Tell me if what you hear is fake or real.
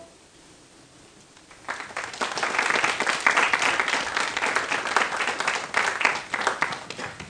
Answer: real